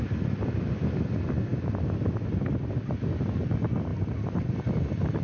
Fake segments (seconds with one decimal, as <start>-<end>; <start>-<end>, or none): none